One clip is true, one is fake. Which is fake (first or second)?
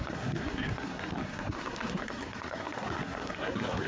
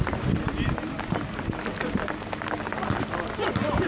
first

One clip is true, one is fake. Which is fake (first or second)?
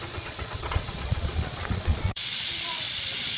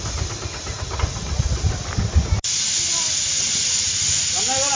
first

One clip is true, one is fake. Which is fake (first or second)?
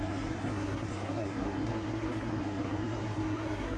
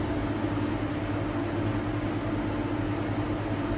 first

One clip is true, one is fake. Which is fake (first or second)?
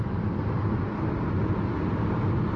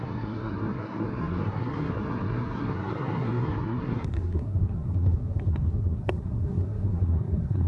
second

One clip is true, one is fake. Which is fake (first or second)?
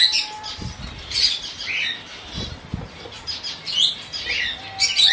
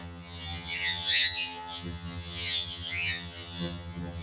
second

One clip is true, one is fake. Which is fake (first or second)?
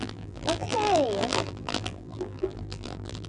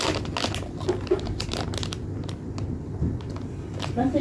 first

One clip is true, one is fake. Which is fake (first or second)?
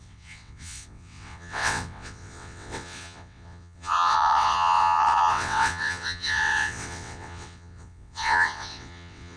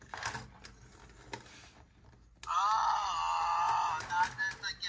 first